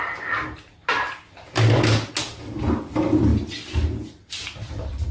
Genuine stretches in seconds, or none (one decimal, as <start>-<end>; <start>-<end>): 0.0-5.1

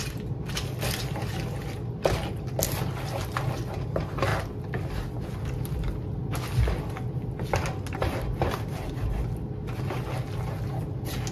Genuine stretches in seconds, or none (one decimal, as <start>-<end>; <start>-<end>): 0.0-11.3

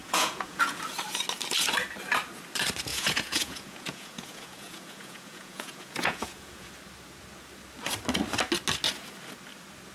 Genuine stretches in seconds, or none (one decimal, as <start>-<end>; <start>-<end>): 0.8-2.9; 6.7-9.9

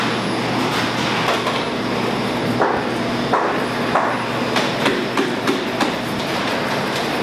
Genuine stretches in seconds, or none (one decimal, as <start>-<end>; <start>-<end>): 0.0-7.2

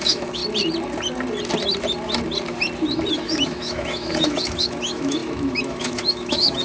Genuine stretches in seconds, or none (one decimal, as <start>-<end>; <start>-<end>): 0.4-3.1

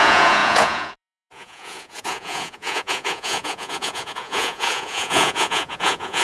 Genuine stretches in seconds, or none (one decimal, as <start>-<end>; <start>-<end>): none

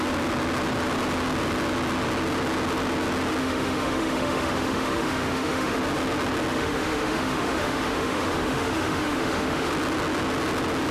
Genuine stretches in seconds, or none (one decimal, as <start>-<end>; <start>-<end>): 0.0-3.4; 5.8-6.5; 9.7-10.9